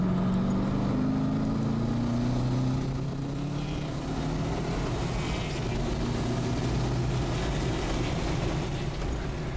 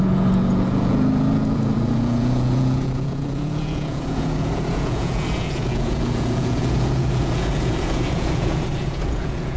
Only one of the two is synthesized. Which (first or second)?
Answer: second